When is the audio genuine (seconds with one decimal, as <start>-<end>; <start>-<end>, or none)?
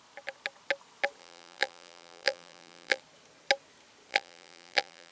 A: 0.0-1.2; 3.0-4.1